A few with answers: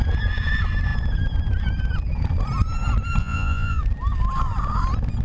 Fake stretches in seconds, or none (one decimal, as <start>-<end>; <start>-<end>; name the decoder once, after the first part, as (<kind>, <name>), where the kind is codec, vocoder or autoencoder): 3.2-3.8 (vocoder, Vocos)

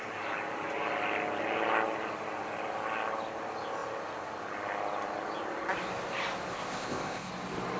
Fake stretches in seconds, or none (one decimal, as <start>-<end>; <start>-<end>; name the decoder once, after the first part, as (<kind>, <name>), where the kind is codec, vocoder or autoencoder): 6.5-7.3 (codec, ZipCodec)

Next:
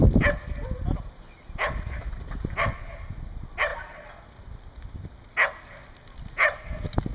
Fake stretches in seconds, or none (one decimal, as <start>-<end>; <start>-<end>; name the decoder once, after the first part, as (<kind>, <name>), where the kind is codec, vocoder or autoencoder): none

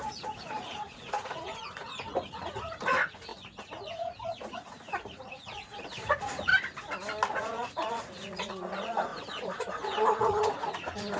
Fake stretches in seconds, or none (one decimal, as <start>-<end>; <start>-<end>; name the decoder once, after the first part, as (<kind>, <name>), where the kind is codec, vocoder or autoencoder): 0.0-6.5 (vocoder, Vocos); 7.3-11.2

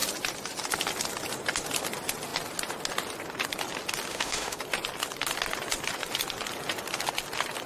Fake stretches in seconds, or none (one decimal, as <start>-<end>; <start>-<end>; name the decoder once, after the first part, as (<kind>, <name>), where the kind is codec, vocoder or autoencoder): 4.1-4.6 (autoencoder, DAC-VAE)

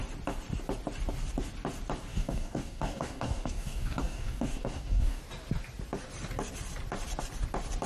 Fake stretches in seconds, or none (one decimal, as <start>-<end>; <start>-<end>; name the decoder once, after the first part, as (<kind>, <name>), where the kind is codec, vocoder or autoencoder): 2.1-5.2 (codec, DAC)